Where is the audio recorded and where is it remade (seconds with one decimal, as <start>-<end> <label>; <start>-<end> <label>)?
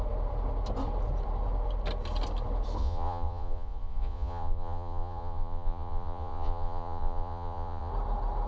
0.0-2.8 recorded; 2.8-7.9 remade; 7.9-8.5 recorded